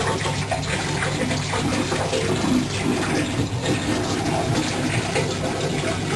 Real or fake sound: real